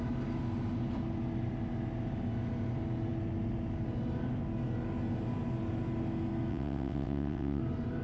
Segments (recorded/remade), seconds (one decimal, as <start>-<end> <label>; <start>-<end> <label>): 0.0-6.5 recorded; 6.5-7.6 remade; 7.6-8.0 recorded

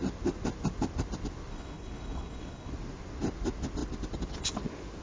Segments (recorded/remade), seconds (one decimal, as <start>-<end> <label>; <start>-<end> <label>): 0.0-1.5 recorded; 1.5-2.7 remade; 2.7-5.0 recorded

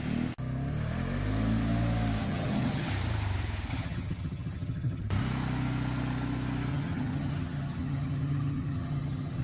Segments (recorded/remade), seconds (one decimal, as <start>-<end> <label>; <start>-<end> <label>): 0.0-2.2 recorded; 2.2-2.9 remade; 2.9-3.7 recorded; 3.7-5.0 remade; 5.0-6.7 recorded; 6.7-9.4 remade

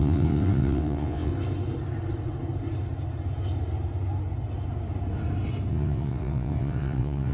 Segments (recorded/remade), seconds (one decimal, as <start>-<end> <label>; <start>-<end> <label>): 0.0-1.3 remade; 1.3-5.7 recorded; 5.7-7.3 remade

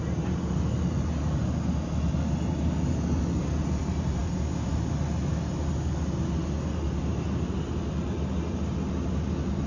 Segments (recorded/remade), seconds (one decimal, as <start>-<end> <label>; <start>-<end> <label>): 0.0-9.7 recorded

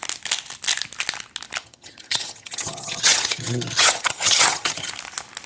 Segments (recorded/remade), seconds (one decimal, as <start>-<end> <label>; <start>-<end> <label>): 0.0-1.6 recorded; 1.6-4.9 remade; 4.9-5.5 recorded

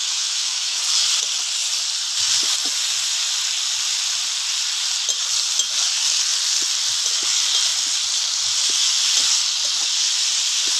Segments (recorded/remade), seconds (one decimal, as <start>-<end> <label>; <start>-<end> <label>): 0.0-0.8 remade; 0.8-10.8 recorded

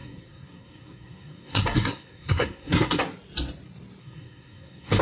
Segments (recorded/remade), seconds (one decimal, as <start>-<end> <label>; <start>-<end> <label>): 0.0-3.0 remade; 3.0-4.0 recorded; 4.0-5.0 remade